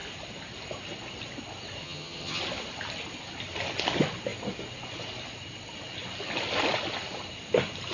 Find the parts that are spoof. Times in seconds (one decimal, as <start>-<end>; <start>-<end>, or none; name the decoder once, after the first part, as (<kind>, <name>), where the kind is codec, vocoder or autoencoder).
1.8-2.4 (vocoder, HiFi-GAN)